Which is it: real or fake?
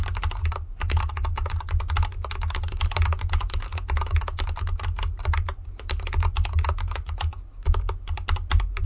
real